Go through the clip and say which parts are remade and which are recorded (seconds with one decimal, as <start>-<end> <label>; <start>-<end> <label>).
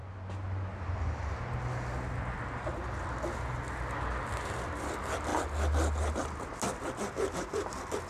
0.0-8.1 recorded